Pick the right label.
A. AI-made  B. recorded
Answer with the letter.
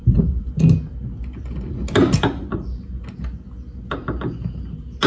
B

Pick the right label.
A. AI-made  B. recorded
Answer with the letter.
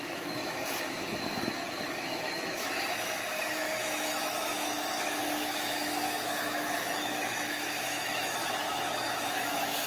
A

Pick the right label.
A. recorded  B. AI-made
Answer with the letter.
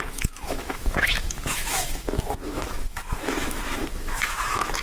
B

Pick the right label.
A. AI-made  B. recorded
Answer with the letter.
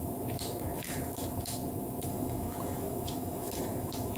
A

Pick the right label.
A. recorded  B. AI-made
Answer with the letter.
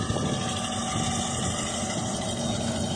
A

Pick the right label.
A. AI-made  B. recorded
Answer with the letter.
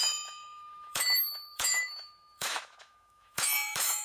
A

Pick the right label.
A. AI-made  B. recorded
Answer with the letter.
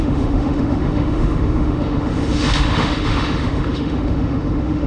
A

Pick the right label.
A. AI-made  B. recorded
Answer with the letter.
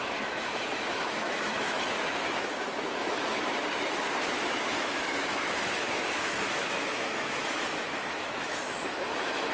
A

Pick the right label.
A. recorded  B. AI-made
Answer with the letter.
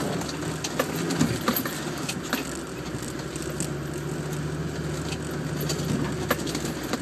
A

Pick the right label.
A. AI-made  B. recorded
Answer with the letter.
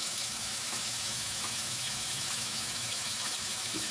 A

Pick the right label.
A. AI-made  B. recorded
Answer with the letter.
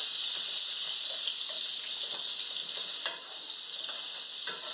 B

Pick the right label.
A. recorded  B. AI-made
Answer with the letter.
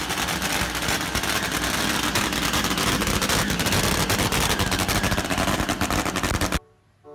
A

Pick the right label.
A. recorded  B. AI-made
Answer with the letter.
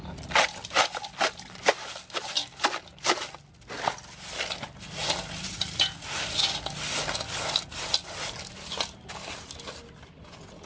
A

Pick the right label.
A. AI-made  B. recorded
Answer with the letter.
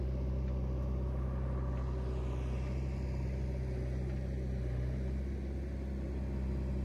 B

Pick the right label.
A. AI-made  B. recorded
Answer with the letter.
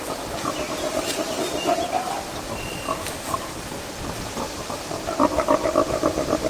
B